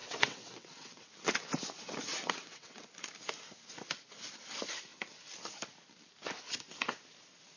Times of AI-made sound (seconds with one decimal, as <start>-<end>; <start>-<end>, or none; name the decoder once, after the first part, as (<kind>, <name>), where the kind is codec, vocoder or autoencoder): 0.0-1.1 (vocoder, WaveNeXt); 2.1-2.9

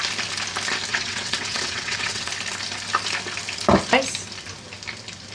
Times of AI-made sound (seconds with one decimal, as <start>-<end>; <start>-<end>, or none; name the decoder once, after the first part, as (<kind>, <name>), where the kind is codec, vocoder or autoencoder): 0.9-2.3 (vocoder, WaveNeXt)